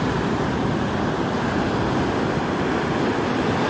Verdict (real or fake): fake